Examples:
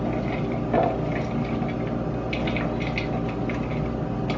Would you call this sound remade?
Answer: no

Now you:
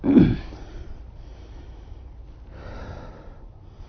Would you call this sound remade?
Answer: yes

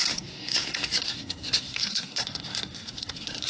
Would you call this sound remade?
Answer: yes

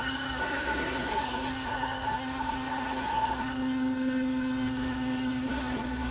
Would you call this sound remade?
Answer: yes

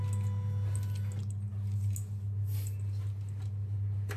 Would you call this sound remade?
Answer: no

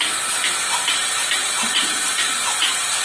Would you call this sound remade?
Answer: no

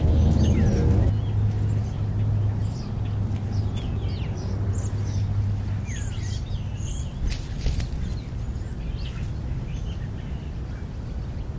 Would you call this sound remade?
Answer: no